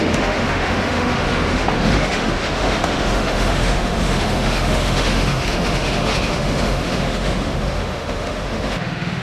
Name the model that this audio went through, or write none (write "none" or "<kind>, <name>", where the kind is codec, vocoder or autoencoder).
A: autoencoder, DAC-VAE